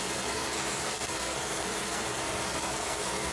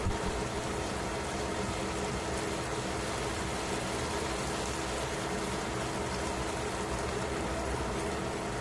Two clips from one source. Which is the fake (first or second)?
first